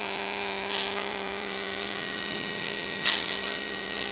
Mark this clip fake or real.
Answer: fake